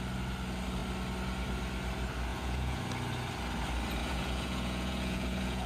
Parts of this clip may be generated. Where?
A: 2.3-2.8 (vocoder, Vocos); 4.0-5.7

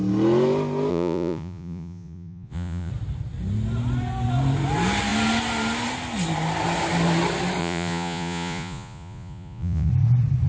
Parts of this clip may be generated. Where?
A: 0.9-2.9 (vocoder, Vocos); 7.6-9.9

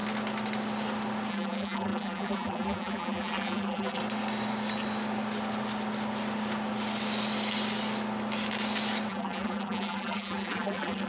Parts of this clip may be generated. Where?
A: 1.3-4.0 (vocoder, BigVGAN v2); 9.1-11.1

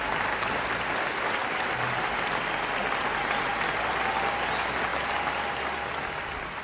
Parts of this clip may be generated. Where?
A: 1.4-2.4 (vocoder, BigVGAN v2)

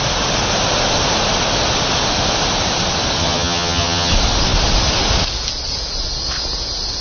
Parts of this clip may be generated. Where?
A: 3.2-4.1 (vocoder, HiFi-GAN)

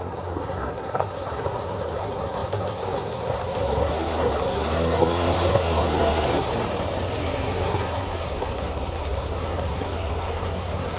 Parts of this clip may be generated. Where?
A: 0.0-6.5 (codec, SNAC); 7.2-11.0